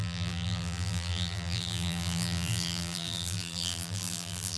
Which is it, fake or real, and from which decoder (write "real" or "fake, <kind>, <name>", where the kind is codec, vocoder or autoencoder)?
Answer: fake, vocoder, BigVGAN v2